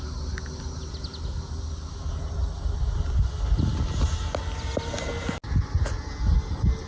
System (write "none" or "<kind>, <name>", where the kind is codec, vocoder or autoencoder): none